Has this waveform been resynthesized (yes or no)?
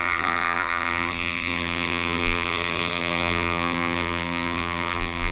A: yes